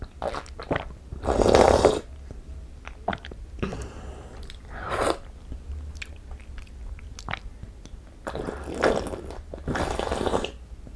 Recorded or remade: recorded